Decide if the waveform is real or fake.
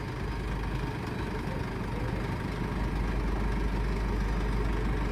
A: real